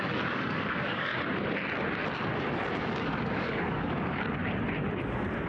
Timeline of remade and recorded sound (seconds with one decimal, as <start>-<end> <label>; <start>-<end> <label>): 0.0-1.1 remade; 1.1-2.8 recorded; 2.8-4.4 remade; 4.4-5.5 recorded